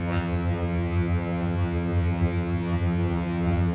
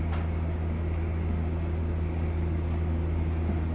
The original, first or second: second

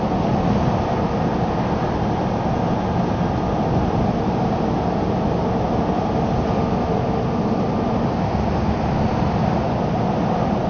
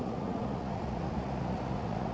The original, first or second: first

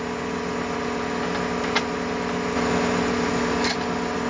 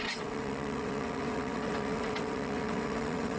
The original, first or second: first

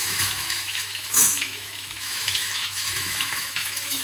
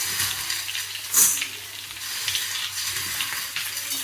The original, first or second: second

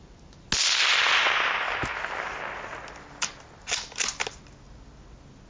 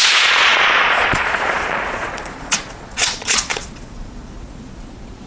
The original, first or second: first